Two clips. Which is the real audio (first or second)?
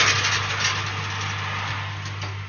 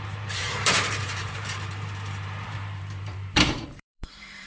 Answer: first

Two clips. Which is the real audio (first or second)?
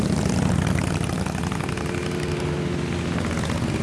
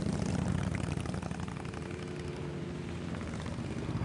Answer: first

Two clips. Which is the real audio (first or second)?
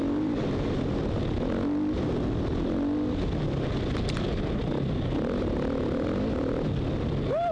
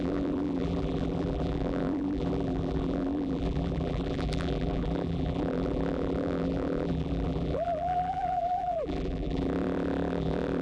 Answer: first